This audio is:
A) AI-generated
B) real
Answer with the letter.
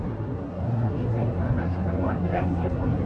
A